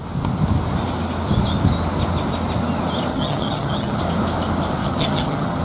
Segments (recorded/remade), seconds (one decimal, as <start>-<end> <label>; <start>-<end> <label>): 0.0-3.1 recorded; 3.1-4.0 remade; 4.0-4.8 recorded; 4.8-5.6 remade

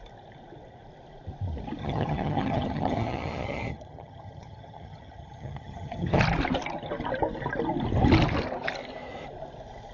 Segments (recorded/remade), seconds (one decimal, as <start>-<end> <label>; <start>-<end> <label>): 0.0-1.8 recorded; 1.8-6.2 remade; 6.2-9.9 recorded

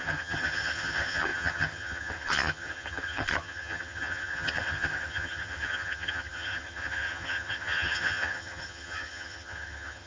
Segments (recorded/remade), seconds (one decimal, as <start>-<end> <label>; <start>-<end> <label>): 0.0-10.1 remade